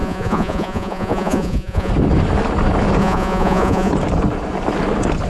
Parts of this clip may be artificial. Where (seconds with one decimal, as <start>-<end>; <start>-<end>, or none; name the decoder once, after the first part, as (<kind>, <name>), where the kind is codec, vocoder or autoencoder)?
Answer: 0.0-1.9 (vocoder, Vocos); 3.0-3.9